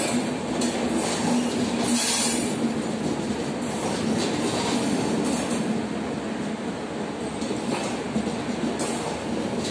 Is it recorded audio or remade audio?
recorded